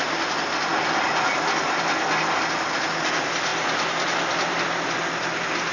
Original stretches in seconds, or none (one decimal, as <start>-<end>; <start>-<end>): 0.0-5.7